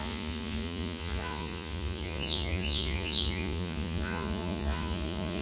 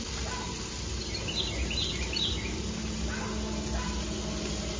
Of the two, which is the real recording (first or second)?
second